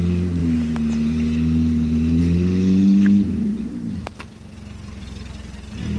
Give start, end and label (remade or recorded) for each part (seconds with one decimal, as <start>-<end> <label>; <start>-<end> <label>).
0.0-6.0 recorded